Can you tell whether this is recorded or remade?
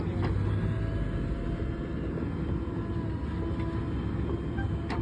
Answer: recorded